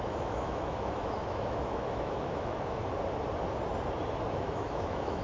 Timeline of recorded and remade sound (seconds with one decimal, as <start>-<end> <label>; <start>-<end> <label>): 0.0-2.8 remade; 2.8-4.3 recorded; 4.3-5.2 remade